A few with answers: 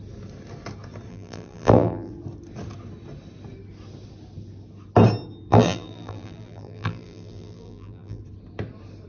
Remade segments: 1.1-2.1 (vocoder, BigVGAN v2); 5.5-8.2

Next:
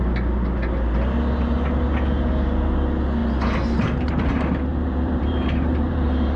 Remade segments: 4.7-6.4 (vocoder, BigVGAN v2)

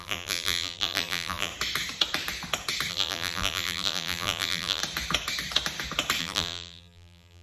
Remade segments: 0.0-1.5 (vocoder, BigVGAN v2); 2.9-4.8; 6.2-7.4

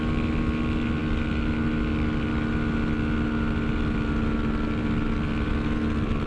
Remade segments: none

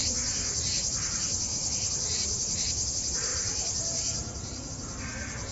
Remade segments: 0.8-5.5 (vocoder, BigVGAN v2)

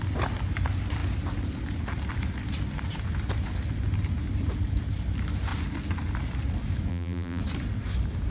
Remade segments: 6.9-7.4 (vocoder, BigVGAN v2)

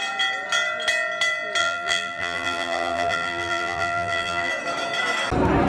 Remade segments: 1.6-4.5 (vocoder, BigVGAN v2)